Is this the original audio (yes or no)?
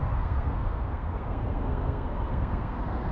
no